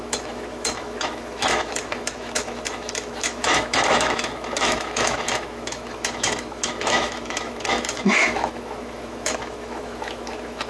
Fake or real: fake